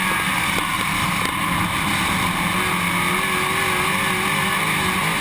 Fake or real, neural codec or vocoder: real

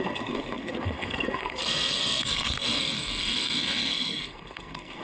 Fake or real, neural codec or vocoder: fake, codec, SNAC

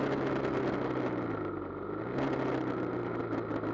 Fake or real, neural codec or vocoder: real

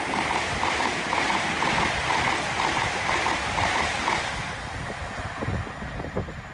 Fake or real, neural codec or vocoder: real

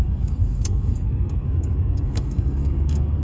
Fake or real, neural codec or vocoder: fake, codec, SNAC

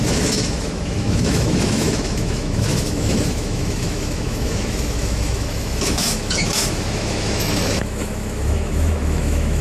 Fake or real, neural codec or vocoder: fake, autoencoder, DAC-VAE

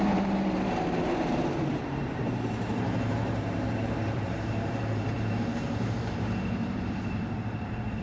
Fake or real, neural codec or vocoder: fake, vocoder, BigVGAN v2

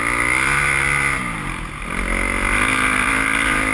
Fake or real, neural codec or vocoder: real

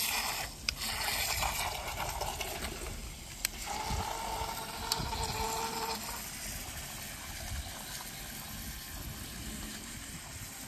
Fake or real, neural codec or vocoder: real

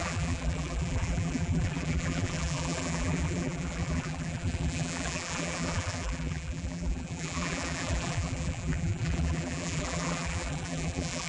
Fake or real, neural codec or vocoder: fake, vocoder, BigVGAN v2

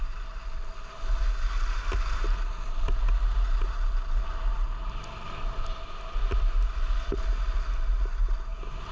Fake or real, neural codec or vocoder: real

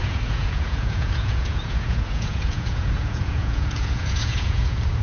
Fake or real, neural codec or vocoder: fake, vocoder, Vocos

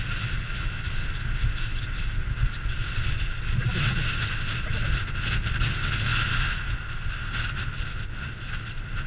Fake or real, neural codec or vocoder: real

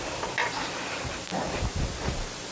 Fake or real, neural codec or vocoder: real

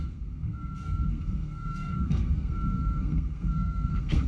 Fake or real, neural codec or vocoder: fake, codec, SNAC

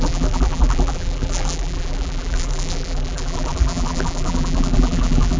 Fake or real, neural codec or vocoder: fake, vocoder, BigVGAN v2